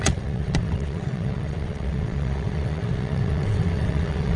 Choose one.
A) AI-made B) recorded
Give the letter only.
A